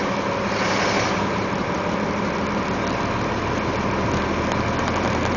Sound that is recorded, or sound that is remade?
recorded